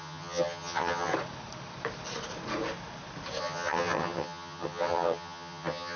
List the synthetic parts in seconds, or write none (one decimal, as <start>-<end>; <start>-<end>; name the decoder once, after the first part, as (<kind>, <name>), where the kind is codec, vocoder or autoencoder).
0.0-1.1 (vocoder, HiFi-GAN); 3.4-6.0